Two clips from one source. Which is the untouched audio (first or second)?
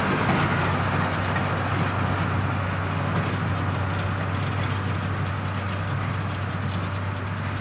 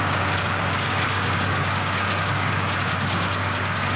first